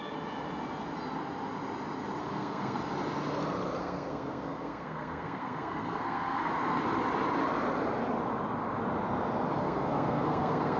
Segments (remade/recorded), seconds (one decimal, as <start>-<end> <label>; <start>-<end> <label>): 0.0-2.2 recorded; 2.2-2.8 remade; 2.8-3.8 recorded; 3.8-6.5 remade; 6.5-9.6 recorded; 9.6-10.8 remade